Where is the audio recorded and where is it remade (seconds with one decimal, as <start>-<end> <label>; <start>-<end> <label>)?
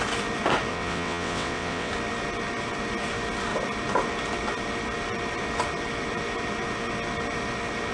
0.0-0.7 recorded; 0.7-1.9 remade; 1.9-7.9 recorded